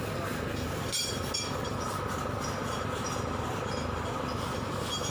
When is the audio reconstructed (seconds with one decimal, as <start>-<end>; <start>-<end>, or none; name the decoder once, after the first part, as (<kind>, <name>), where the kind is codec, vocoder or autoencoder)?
none